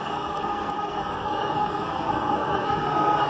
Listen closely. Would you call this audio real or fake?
fake